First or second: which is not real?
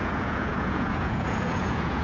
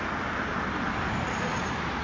first